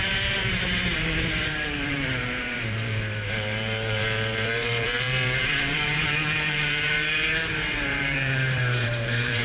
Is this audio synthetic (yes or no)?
yes